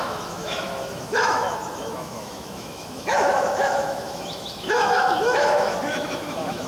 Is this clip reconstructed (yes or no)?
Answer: yes